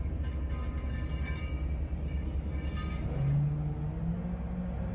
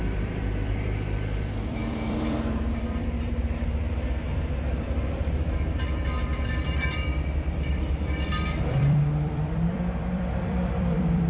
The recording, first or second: first